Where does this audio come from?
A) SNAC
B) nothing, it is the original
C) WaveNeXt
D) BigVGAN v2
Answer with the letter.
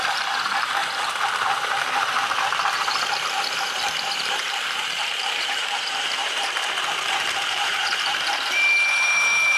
D